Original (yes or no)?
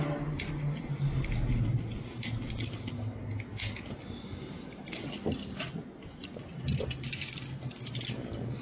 yes